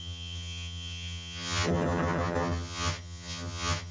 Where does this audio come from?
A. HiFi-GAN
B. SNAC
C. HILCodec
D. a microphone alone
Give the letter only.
A